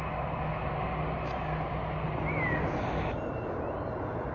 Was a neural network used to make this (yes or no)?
no